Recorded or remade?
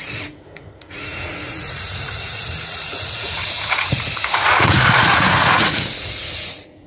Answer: remade